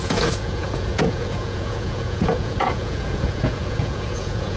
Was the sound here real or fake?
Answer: fake